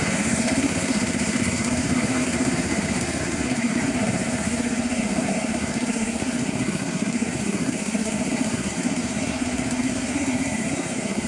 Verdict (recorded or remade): remade